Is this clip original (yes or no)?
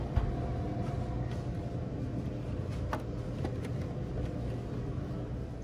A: yes